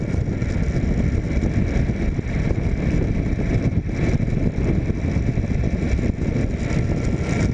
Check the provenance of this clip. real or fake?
real